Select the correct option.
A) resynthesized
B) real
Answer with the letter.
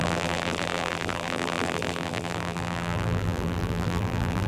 A